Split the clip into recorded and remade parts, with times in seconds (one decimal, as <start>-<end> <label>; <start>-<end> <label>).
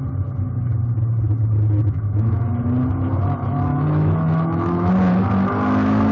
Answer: 0.0-1.8 recorded; 1.8-2.4 remade; 2.4-3.7 recorded; 3.7-4.9 remade; 4.9-6.1 recorded